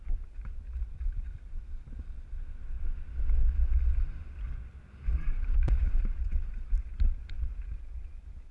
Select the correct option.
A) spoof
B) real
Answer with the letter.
B